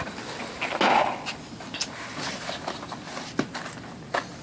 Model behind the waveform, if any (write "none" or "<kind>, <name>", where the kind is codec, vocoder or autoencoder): none